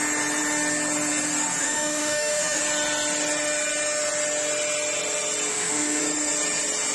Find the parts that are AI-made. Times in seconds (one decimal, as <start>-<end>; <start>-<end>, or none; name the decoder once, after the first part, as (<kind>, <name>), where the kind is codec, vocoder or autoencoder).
1.6-2.6 (autoencoder, DAC-VAE); 5.5-6.0